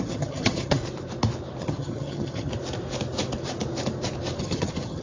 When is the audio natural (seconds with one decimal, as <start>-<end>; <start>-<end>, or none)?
0.8-1.6; 2.5-4.4